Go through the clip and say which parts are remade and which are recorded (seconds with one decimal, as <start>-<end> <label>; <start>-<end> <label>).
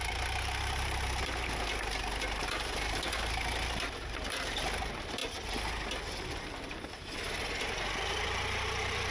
0.0-5.2 remade; 5.2-6.4 recorded; 6.4-9.1 remade